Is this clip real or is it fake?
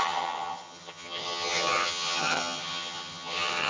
fake